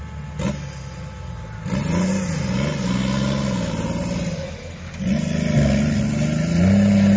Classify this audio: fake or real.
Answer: real